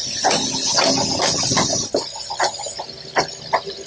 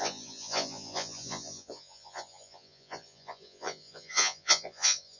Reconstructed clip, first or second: second